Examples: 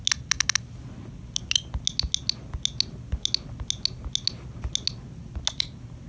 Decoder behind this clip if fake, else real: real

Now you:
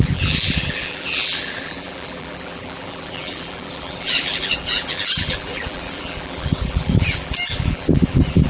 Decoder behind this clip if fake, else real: fake, vocoder, BigVGAN v2